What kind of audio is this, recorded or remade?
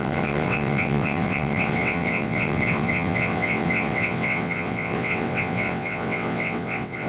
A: remade